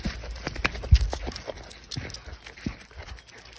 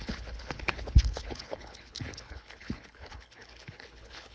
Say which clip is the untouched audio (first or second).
first